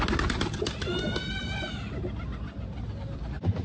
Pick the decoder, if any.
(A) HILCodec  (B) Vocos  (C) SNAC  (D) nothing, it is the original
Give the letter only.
D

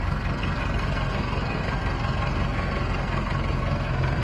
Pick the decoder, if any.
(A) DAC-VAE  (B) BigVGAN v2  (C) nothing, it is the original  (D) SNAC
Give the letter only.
D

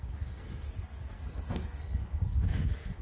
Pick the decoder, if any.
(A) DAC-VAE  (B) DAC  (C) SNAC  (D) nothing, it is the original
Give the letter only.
C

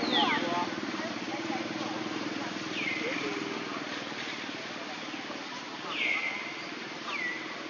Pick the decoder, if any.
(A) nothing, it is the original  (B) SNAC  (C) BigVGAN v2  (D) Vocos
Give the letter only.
A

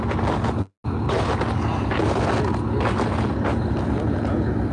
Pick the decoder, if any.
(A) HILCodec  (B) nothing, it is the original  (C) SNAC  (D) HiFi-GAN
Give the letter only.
B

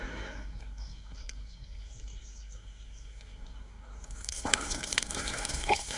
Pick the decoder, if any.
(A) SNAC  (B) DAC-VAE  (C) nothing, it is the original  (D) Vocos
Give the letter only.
A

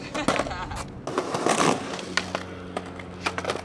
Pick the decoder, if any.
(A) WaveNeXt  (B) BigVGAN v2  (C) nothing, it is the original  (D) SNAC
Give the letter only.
C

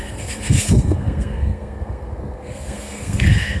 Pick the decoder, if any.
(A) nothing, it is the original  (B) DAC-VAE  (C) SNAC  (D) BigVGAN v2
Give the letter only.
C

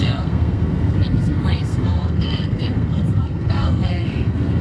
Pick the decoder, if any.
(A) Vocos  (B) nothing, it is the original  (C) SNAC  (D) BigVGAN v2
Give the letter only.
C